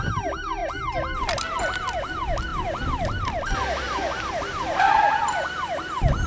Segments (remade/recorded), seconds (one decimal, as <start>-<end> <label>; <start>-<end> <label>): 0.0-6.3 recorded